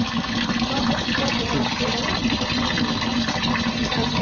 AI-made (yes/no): no